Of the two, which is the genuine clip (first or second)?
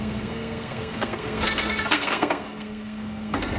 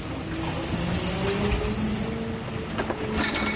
second